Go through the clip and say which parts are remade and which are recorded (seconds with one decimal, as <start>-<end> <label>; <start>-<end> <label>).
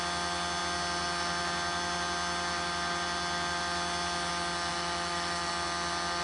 0.0-4.7 recorded; 4.7-5.5 remade; 5.5-6.2 recorded